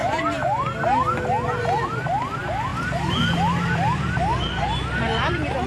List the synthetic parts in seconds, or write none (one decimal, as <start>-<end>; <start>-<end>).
none

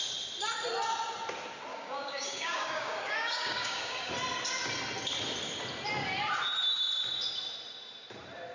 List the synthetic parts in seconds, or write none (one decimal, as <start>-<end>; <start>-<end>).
1.7-4.1

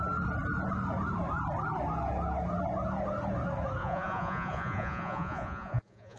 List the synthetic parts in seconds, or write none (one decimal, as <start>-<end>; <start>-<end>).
3.8-6.2

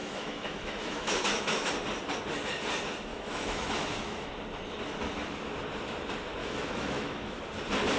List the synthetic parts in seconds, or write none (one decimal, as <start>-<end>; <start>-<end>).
0.0-1.7; 3.1-4.3; 6.4-7.4

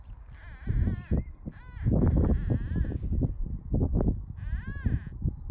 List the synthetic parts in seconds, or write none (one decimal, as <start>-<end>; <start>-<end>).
none

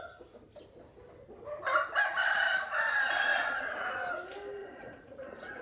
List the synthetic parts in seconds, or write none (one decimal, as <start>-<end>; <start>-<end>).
3.3-3.9; 4.6-5.6